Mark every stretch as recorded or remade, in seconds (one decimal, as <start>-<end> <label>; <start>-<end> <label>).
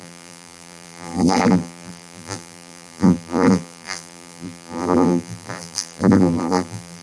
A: 0.0-7.0 remade